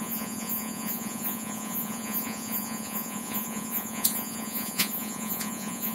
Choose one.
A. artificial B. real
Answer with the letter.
A